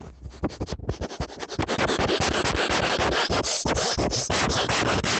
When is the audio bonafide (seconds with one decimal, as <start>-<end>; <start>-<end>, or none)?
0.0-5.2